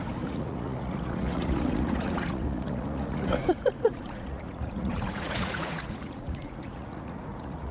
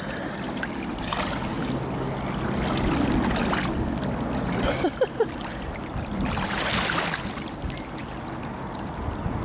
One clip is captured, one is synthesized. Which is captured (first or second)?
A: second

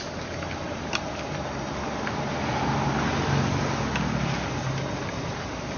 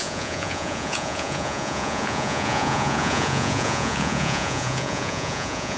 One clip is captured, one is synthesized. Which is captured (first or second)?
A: first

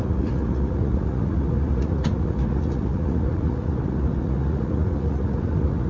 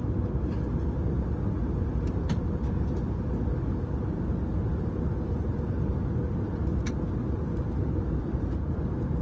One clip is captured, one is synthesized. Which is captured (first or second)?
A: second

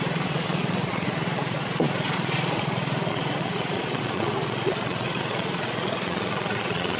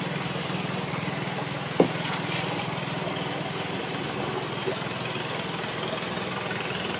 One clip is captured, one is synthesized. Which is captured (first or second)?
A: second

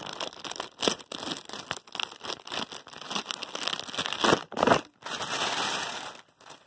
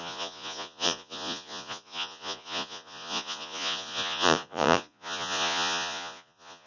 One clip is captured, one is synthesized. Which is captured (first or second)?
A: first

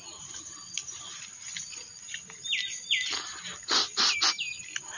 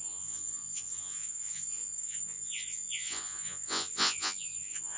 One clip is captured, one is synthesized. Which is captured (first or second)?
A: first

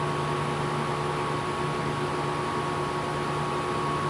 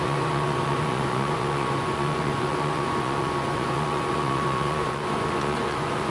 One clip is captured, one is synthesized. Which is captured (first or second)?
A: first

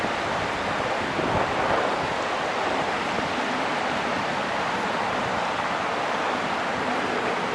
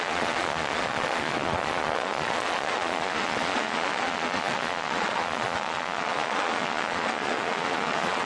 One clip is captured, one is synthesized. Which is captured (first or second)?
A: first